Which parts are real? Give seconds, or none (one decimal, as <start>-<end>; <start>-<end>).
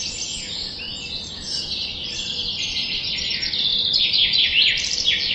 0.0-5.3